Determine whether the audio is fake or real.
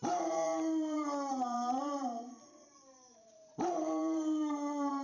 fake